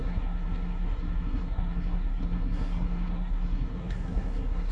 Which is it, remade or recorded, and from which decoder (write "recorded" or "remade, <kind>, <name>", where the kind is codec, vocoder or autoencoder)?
remade, codec, SNAC